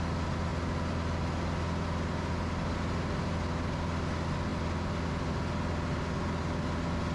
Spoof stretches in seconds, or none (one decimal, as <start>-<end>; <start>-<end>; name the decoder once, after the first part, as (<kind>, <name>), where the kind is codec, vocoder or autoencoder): none